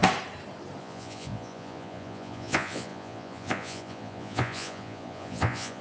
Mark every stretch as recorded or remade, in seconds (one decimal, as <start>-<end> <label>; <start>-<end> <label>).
0.0-0.8 recorded; 0.8-5.8 remade